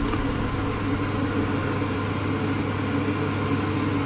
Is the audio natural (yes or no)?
yes